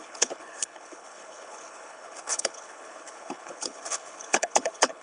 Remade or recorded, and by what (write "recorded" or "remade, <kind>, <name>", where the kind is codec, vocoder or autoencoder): remade, codec, HILCodec